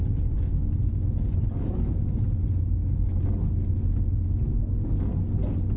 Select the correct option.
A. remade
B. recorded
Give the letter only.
B